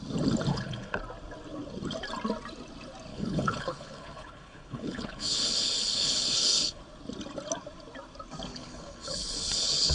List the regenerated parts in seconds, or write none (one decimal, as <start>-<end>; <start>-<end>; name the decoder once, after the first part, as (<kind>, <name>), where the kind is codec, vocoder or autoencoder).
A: 0.5-1.0 (codec, HILCodec); 3.1-6.8; 8.5-9.9